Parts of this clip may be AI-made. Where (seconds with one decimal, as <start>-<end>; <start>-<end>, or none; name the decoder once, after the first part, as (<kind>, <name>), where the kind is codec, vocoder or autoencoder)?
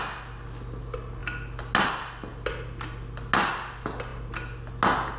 none